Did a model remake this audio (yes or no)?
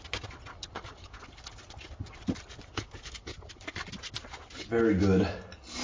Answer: no